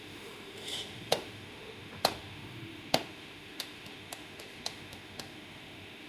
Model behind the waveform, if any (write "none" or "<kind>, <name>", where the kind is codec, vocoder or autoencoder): autoencoder, DAC-VAE